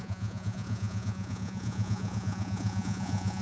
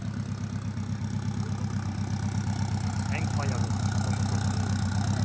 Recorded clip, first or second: second